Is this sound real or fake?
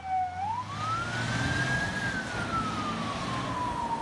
real